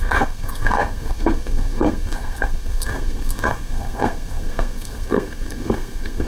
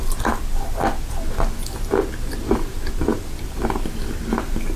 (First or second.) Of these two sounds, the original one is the second